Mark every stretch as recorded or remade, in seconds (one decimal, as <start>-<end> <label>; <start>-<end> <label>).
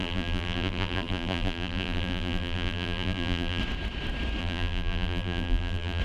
0.0-3.6 remade; 3.6-4.4 recorded; 4.4-6.0 remade